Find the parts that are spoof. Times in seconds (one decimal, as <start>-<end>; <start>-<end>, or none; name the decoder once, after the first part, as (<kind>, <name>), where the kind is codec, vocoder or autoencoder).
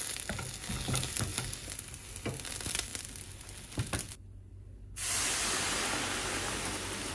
none